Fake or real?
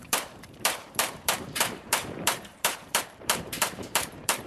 fake